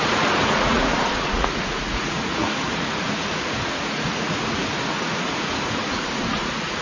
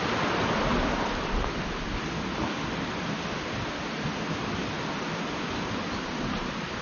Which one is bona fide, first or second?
second